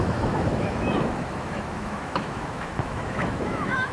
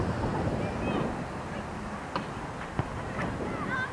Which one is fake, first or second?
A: first